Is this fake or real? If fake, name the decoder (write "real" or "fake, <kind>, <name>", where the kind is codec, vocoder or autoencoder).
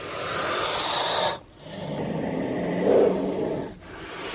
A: real